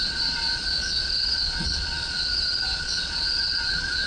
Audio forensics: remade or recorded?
remade